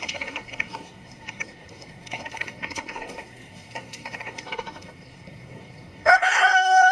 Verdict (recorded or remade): remade